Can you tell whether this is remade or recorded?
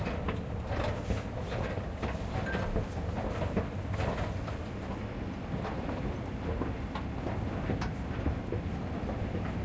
recorded